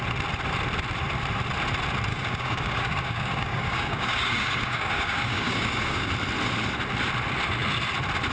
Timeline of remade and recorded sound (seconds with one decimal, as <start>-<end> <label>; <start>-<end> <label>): 0.0-2.1 recorded; 2.1-6.1 remade; 6.1-8.3 recorded